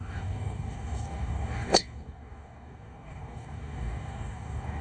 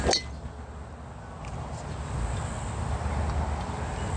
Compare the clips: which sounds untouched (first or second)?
second